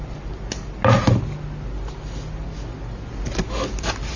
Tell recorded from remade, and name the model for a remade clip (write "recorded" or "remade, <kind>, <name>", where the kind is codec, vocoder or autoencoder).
recorded